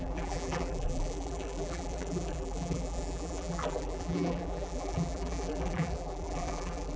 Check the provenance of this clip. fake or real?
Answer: fake